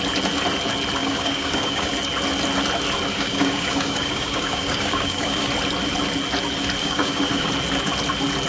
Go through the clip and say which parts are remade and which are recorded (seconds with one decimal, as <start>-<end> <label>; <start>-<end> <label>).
0.0-1.0 recorded; 1.0-1.9 remade; 1.9-3.1 recorded; 3.1-5.5 remade; 5.5-6.8 recorded; 6.8-7.5 remade; 7.5-8.5 recorded